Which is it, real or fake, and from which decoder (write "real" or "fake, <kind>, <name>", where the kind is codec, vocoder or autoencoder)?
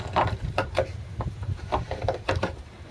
fake, vocoder, BigVGAN v2